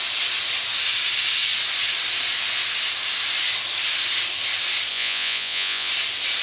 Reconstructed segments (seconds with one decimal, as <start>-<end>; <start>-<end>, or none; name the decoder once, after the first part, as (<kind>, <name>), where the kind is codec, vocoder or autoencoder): 4.9-5.9 (vocoder, Vocos)